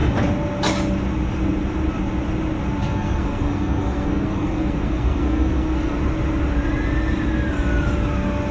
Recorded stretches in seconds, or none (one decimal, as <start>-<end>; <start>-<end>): 0.0-2.8; 6.0-8.5